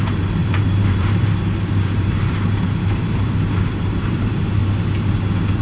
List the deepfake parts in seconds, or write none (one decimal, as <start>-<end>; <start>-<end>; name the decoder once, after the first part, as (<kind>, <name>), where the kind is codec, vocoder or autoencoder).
0.0-4.6 (vocoder, BigVGAN v2)